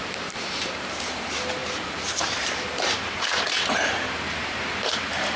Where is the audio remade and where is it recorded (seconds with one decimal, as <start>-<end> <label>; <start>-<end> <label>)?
0.0-5.4 remade